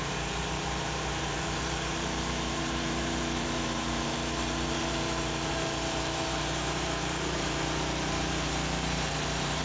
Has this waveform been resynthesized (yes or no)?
yes